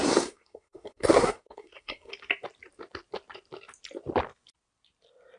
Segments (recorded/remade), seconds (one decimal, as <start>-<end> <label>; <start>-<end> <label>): 0.0-2.1 remade; 2.1-5.4 recorded